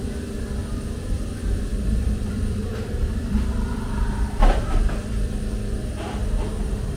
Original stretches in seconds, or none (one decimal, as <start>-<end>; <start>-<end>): 6.2-7.0